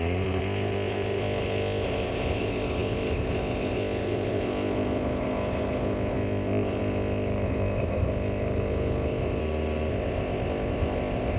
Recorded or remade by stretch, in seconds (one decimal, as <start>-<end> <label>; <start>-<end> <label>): 0.0-9.4 remade; 9.4-9.9 recorded; 9.9-11.4 remade